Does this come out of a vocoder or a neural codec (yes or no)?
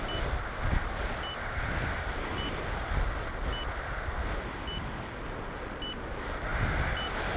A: no